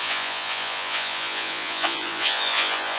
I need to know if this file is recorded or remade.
remade